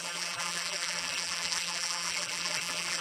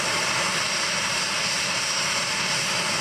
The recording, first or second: second